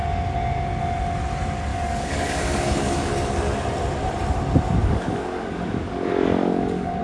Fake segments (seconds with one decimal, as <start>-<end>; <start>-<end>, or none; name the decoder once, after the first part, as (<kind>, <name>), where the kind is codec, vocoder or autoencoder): 1.7-3.1 (codec, DAC); 4.8-7.0